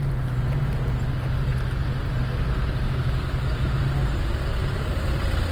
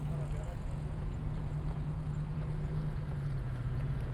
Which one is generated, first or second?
second